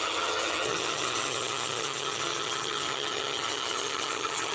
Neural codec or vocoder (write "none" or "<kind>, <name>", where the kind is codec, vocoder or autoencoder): vocoder, HiFi-GAN